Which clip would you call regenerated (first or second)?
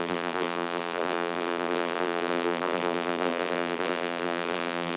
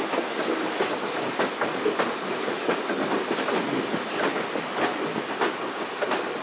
first